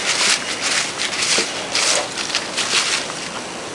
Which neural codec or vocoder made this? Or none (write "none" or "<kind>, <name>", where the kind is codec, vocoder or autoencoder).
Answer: none